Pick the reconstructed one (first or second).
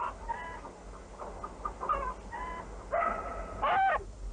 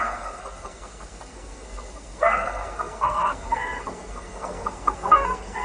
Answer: second